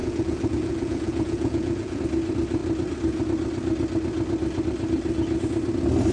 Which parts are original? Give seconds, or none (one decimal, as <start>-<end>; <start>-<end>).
2.0-6.1